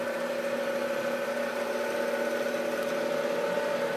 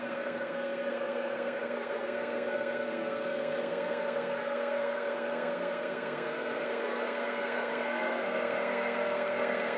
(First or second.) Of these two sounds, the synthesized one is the second